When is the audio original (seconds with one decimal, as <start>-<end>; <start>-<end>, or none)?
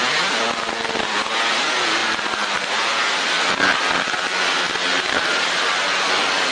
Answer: 0.0-2.0; 3.0-4.9; 5.7-6.5